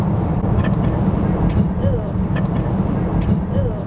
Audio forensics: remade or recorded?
remade